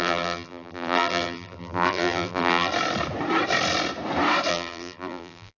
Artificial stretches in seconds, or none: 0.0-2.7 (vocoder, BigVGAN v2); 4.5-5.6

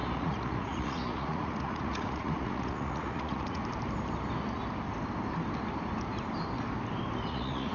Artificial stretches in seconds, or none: 0.0-3.6 (vocoder, Vocos); 7.3-7.7

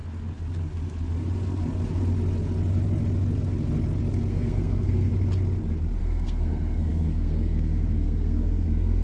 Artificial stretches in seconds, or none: 4.3-5.1 (codec, SNAC); 6.0-9.0